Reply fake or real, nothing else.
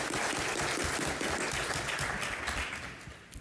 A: real